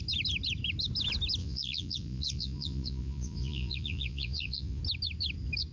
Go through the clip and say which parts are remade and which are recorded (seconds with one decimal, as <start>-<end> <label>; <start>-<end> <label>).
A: 0.0-1.4 recorded; 1.4-4.8 remade; 4.8-5.7 recorded